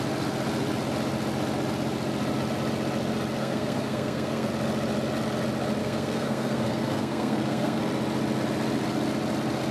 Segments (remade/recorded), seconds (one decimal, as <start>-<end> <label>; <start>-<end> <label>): 0.0-3.4 recorded; 3.4-4.5 remade; 4.5-5.8 recorded; 5.8-7.8 remade; 7.8-9.7 recorded